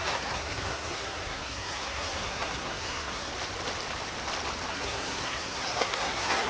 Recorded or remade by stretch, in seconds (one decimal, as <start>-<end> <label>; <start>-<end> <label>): 0.0-3.3 remade; 3.3-4.7 recorded; 4.7-6.5 remade

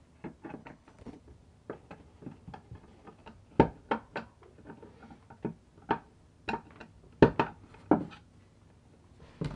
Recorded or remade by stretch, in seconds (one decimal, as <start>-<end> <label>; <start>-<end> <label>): 0.0-0.6 recorded; 0.6-1.2 remade; 1.2-9.6 recorded

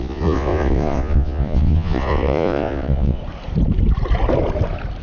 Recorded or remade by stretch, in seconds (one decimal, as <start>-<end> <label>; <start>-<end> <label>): 0.0-3.2 remade; 3.2-5.0 recorded